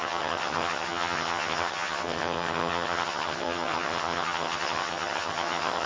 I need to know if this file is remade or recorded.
remade